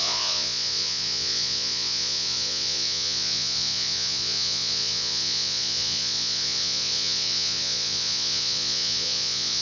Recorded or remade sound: remade